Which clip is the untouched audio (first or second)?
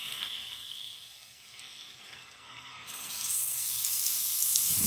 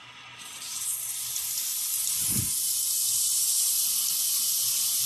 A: second